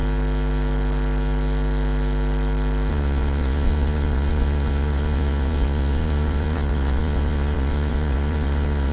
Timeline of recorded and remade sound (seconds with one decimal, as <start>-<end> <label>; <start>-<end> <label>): 0.0-2.9 recorded; 2.9-8.9 remade